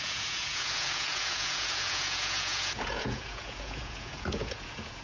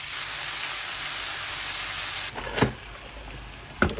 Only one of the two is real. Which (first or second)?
second